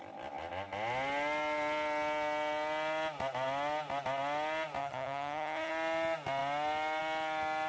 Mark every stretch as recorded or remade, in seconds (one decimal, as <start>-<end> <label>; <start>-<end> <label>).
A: 0.0-4.8 recorded; 4.8-5.7 remade; 5.7-7.7 recorded